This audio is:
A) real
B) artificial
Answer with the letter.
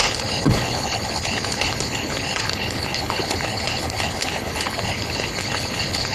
B